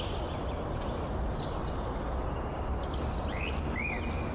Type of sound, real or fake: real